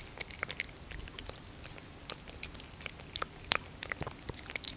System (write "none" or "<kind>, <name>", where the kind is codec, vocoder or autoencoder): none